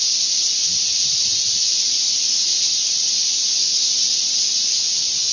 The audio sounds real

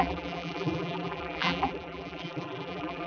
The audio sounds fake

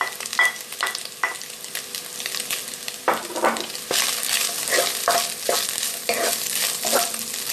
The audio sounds real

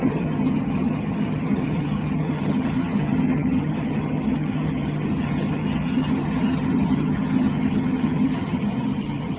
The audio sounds fake